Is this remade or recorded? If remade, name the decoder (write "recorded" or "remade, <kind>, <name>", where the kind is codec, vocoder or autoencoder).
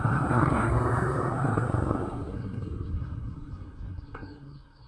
remade, codec, SNAC